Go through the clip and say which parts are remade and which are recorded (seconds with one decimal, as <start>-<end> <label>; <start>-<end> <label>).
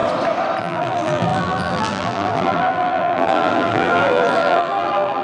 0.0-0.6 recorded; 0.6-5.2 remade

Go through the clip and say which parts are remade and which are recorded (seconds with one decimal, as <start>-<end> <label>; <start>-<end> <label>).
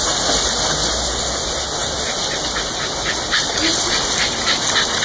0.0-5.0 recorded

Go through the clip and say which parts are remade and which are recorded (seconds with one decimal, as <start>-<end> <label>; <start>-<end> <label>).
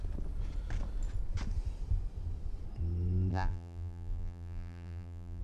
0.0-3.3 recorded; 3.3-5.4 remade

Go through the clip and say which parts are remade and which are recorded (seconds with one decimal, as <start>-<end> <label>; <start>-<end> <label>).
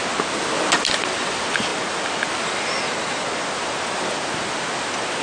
0.0-5.2 recorded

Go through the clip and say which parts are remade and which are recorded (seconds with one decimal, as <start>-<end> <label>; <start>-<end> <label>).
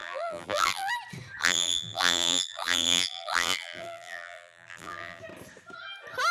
0.0-0.9 remade; 0.9-1.4 recorded; 1.4-5.2 remade; 5.2-6.3 recorded